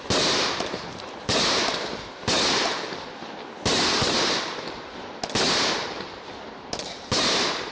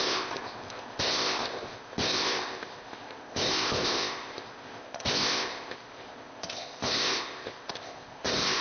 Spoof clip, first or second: second